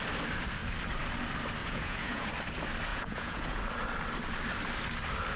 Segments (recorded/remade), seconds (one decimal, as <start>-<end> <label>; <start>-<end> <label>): 0.0-1.6 recorded; 1.6-2.3 remade; 2.3-2.9 recorded; 2.9-3.6 remade; 3.6-5.4 recorded